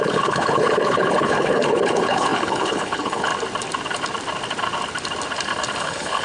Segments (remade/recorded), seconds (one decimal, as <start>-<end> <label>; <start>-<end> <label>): 0.0-3.3 remade; 3.3-5.8 recorded; 5.8-6.2 remade